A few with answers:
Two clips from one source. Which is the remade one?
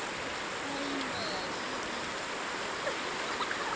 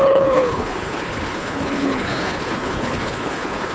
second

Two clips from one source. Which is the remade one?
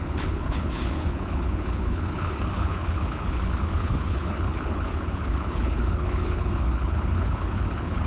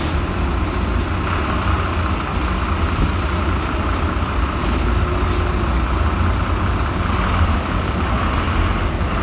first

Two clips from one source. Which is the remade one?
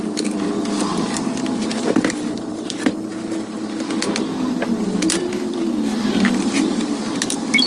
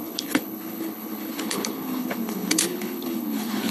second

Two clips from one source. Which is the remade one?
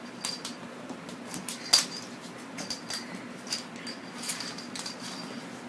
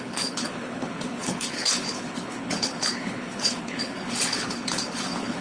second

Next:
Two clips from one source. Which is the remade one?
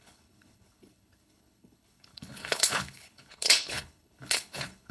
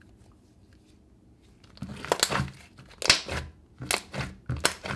first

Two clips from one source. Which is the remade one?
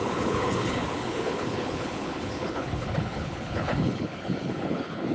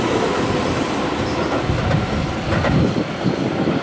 first